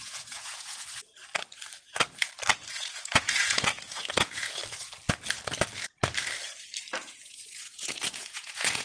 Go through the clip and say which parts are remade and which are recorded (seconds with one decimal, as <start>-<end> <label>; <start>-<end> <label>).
0.0-1.1 remade; 1.1-2.7 recorded; 2.7-4.6 remade; 4.6-7.0 recorded; 7.0-8.8 remade